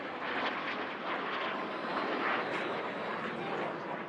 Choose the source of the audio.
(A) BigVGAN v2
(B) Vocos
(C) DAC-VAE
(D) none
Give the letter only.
D